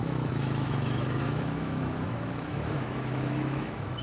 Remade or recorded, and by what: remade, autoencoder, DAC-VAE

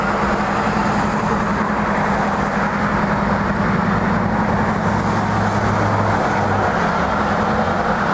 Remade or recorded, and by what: recorded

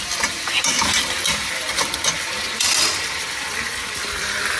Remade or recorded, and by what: recorded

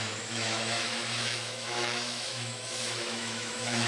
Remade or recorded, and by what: remade, autoencoder, DAC-VAE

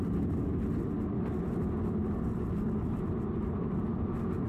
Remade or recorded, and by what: recorded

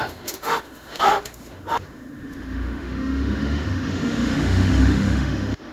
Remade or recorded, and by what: remade, autoencoder, DAC-VAE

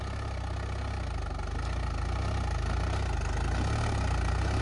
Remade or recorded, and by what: recorded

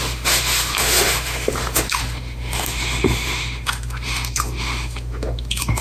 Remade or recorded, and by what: remade, autoencoder, DAC-VAE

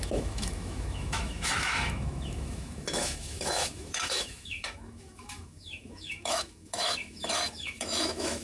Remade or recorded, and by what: remade, autoencoder, DAC-VAE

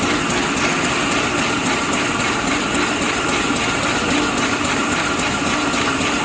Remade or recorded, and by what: recorded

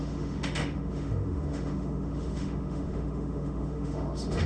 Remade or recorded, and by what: remade, autoencoder, DAC-VAE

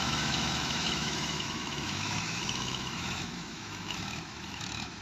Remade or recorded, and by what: remade, autoencoder, DAC-VAE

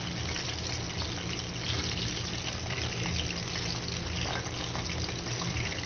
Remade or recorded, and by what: recorded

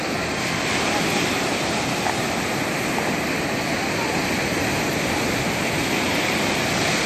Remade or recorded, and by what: recorded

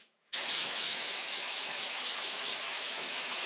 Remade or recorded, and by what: remade, autoencoder, DAC-VAE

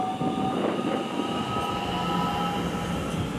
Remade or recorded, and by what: recorded